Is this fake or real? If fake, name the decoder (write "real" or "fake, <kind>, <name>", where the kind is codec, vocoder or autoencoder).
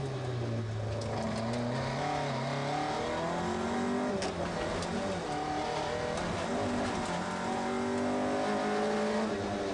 real